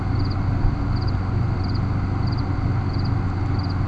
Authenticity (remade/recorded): recorded